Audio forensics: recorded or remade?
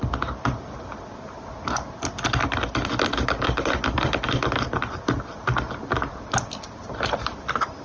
recorded